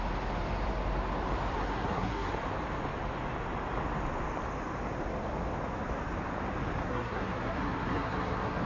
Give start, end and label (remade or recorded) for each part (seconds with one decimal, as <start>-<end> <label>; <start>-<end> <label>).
0.0-1.5 recorded; 1.5-2.3 remade; 2.3-6.8 recorded; 6.8-8.6 remade